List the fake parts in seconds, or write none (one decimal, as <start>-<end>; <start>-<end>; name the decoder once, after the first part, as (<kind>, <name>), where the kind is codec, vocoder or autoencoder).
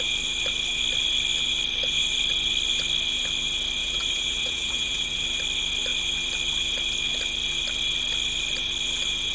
3.8-5.2 (vocoder, WaveNeXt)